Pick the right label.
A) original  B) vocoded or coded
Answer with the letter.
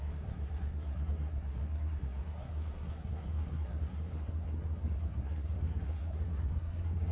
B